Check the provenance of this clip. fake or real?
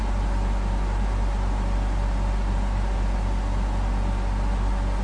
real